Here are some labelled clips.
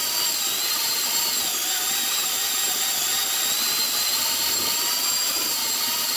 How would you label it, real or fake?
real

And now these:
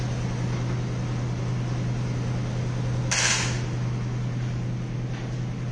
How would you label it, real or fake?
real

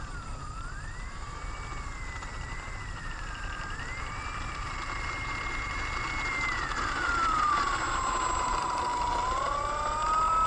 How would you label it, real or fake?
fake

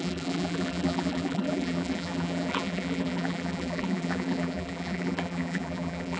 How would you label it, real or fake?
fake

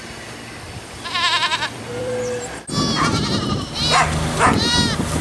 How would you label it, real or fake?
fake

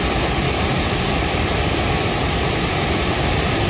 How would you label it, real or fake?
fake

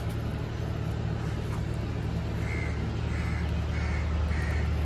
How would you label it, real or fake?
real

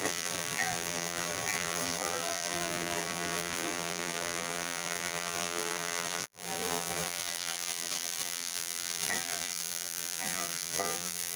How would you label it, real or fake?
fake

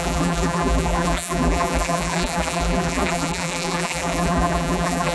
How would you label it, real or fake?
fake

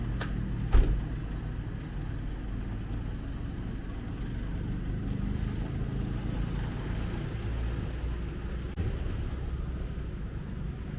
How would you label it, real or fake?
real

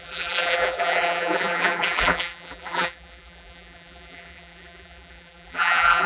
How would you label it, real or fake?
fake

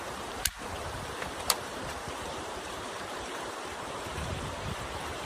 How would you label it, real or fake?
fake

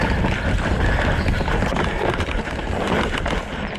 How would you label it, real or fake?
real